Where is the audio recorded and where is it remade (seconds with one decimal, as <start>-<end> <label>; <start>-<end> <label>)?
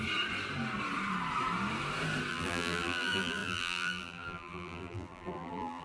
0.0-2.3 recorded; 2.3-5.8 remade